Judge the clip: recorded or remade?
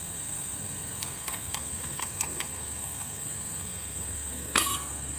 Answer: remade